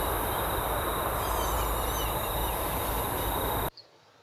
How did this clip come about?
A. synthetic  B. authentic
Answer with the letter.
B